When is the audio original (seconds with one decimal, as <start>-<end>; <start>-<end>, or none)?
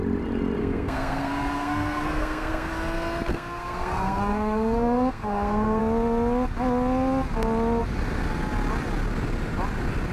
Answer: 0.0-0.6; 2.7-3.3; 5.8-10.1